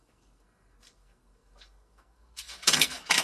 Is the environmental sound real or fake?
fake